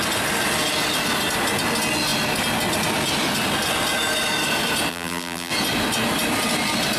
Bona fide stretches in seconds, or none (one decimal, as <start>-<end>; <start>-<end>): 0.0-4.9; 5.5-7.0